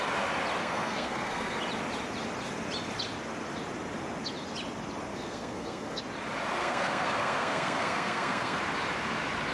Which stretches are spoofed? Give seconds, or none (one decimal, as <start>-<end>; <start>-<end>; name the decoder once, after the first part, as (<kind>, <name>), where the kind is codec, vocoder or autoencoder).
0.6-1.6 (codec, SNAC); 5.1-6.0; 6.6-8.6